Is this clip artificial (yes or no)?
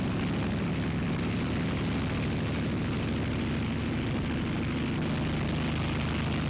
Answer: no